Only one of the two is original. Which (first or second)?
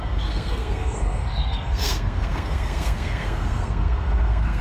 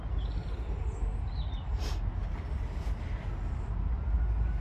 second